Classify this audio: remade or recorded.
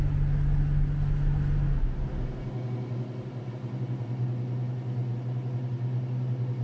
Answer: recorded